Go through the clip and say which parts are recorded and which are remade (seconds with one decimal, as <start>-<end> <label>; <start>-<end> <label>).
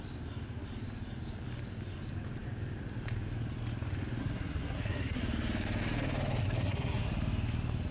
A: 0.0-4.2 recorded; 4.2-5.2 remade; 5.2-6.4 recorded; 6.4-7.1 remade; 7.1-7.9 recorded